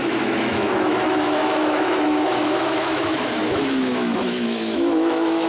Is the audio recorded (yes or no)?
no